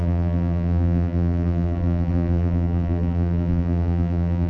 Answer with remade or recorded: remade